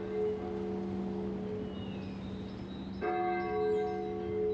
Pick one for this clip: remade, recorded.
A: recorded